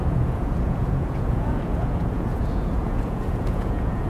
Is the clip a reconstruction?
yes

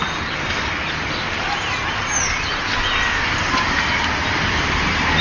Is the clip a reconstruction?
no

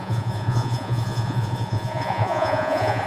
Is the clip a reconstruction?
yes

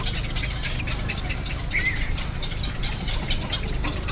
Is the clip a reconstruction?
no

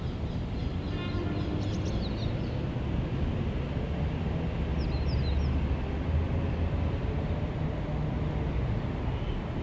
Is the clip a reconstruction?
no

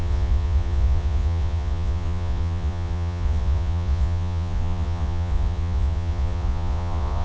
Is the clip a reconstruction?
yes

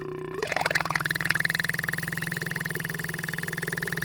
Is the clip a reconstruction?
yes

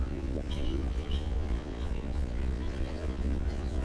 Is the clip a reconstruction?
yes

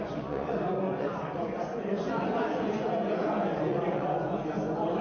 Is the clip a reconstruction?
yes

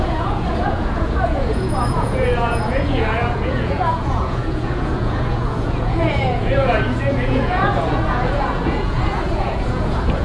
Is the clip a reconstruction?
yes